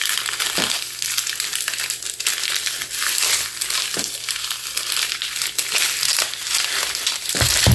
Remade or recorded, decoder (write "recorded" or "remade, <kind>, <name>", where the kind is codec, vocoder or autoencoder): recorded